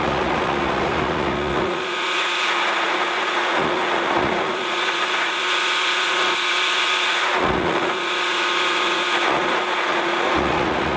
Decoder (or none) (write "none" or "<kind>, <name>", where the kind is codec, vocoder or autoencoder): vocoder, Vocos